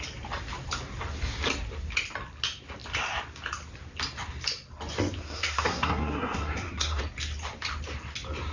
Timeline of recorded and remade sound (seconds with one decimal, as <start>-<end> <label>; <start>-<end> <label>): 0.0-5.2 recorded; 5.2-7.0 remade; 7.0-8.5 recorded